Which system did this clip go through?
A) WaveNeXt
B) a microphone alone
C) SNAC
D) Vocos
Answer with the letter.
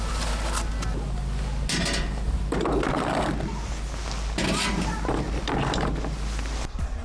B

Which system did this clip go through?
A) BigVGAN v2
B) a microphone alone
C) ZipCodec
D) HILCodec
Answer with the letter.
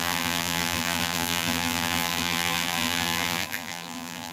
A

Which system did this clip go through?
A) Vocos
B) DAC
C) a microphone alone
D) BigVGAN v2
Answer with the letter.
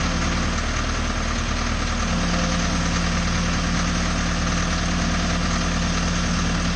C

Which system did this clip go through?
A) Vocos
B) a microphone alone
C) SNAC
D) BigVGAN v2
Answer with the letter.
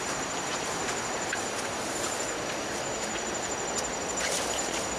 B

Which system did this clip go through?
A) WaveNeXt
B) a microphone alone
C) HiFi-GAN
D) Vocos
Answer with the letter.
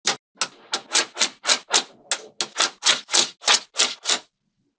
B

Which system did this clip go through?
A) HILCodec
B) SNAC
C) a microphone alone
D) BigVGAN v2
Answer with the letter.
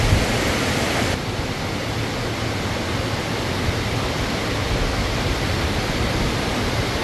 C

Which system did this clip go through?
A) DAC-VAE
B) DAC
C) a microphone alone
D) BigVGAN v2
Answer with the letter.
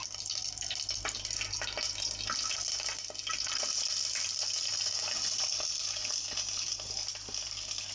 C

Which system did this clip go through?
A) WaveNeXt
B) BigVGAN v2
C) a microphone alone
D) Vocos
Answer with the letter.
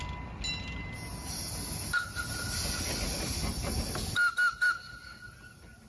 C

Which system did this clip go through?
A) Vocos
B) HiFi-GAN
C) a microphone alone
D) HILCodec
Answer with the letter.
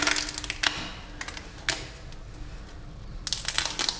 C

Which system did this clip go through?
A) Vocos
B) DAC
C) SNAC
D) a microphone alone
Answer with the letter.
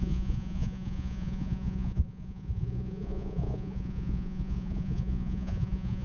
A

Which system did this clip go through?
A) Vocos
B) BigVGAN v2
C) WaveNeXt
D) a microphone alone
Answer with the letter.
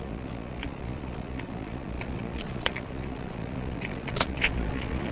A